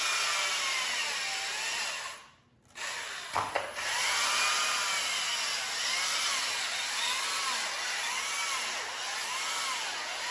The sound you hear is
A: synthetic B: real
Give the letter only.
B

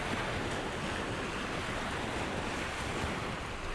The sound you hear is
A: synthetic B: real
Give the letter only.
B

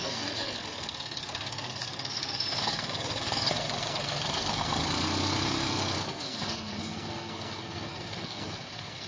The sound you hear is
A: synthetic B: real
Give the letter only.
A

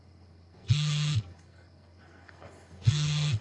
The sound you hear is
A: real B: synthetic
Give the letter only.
B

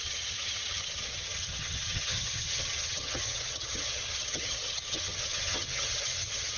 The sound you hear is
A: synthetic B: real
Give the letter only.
A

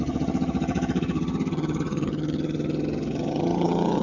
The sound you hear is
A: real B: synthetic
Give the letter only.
B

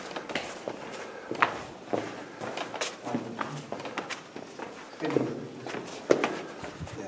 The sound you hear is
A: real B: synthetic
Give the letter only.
A